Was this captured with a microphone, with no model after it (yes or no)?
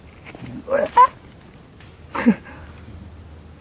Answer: yes